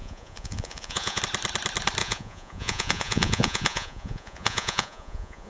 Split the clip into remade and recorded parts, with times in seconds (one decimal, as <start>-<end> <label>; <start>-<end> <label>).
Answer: 0.0-1.2 remade; 1.2-2.0 recorded; 2.0-5.5 remade